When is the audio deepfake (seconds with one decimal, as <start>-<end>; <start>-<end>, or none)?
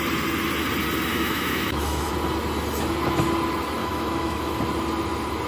1.1-2.1; 3.8-4.6